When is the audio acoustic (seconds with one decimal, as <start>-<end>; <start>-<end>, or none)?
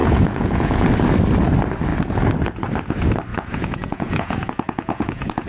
0.9-3.3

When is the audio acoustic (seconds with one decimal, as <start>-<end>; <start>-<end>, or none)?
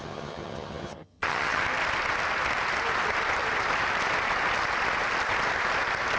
1.6-6.2